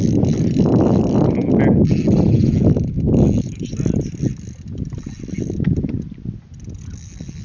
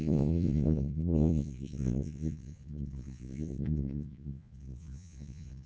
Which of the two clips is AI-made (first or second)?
second